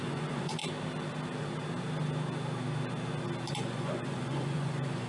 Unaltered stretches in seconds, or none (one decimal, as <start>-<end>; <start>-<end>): 0.6-3.5